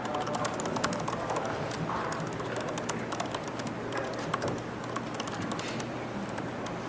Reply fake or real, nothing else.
real